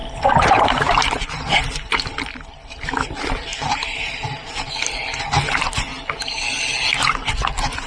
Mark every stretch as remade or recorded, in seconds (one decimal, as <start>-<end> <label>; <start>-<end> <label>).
0.0-5.9 remade; 5.9-7.3 recorded; 7.3-7.9 remade